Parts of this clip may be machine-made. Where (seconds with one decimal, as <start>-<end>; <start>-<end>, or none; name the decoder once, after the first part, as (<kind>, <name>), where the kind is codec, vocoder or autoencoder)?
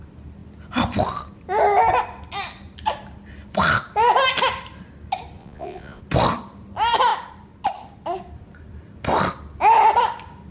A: 5.4-6.0 (vocoder, Vocos)